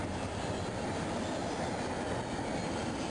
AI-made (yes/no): no